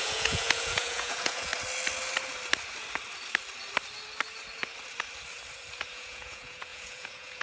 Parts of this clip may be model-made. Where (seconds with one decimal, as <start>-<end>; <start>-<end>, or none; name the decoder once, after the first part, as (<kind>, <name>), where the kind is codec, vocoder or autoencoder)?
0.0-1.5 (vocoder, Vocos); 5.9-7.4